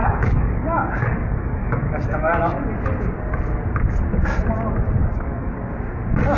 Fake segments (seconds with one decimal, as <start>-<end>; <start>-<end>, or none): 0.0-2.6; 5.1-5.7